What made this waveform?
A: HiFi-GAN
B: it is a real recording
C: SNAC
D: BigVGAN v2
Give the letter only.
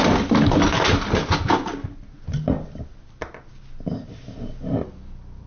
B